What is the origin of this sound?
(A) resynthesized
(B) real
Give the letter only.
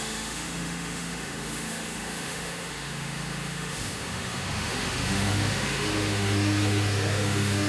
A